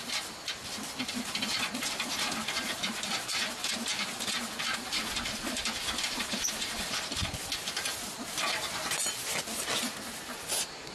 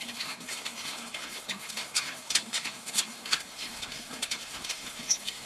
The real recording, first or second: first